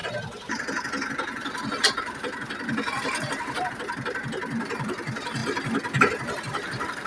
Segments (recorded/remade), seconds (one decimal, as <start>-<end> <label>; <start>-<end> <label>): 0.0-5.4 remade; 5.4-6.0 recorded; 6.0-7.1 remade